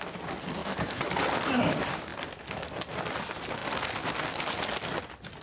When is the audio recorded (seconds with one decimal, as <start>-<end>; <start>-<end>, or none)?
0.0-0.6; 1.1-5.4